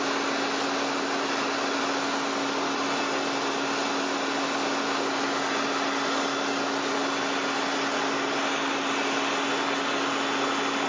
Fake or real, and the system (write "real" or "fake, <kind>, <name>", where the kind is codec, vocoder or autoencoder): real